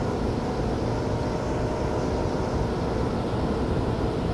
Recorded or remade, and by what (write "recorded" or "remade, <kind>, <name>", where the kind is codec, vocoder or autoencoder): recorded